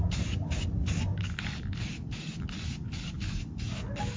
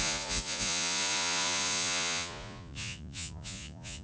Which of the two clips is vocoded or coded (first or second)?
second